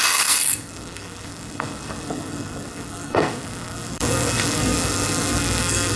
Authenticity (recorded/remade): remade